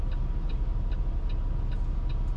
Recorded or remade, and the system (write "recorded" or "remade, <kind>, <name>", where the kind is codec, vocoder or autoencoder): recorded